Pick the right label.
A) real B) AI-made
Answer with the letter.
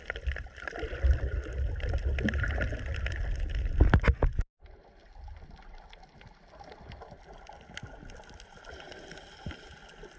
A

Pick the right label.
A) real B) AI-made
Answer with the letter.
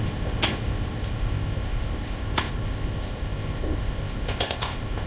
B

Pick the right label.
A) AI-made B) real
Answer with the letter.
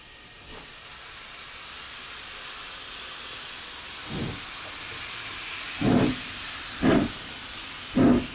B